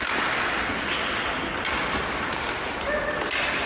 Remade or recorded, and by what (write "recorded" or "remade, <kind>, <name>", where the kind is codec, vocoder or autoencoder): recorded